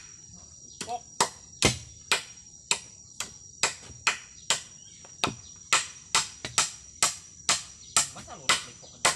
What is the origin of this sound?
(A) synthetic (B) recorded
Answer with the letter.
B